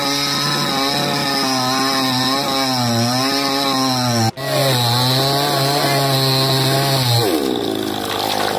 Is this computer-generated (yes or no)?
no